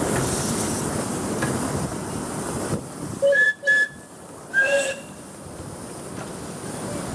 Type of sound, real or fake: fake